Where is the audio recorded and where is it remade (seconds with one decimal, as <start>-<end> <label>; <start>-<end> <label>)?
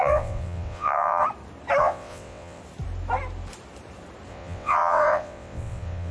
0.0-1.2 remade; 1.2-1.8 recorded; 1.8-2.6 remade; 2.6-4.3 recorded; 4.3-6.1 remade